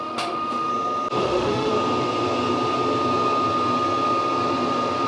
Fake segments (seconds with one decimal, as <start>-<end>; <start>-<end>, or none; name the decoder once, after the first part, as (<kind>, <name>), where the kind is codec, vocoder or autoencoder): 0.0-0.7 (autoencoder, DAC-VAE); 1.2-1.7